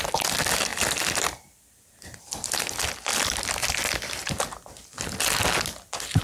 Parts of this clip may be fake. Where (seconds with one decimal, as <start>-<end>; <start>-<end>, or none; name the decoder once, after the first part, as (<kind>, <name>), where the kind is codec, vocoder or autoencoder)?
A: none